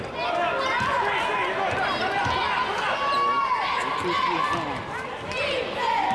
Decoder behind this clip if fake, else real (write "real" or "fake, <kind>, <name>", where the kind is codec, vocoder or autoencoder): real